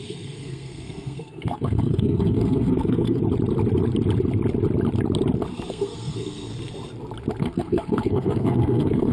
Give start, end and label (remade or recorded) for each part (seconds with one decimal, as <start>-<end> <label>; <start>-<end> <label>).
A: 0.0-3.2 remade; 3.2-5.7 recorded; 5.7-6.5 remade; 6.5-7.4 recorded; 7.4-9.1 remade